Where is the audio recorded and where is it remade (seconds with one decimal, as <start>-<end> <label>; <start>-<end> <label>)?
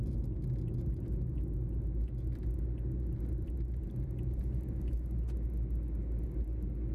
0.0-3.8 recorded; 3.8-4.4 remade; 4.4-6.9 recorded